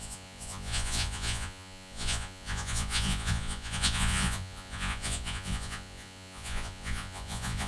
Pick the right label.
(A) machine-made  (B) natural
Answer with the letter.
A